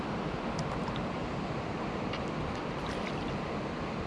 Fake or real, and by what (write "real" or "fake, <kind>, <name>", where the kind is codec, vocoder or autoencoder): real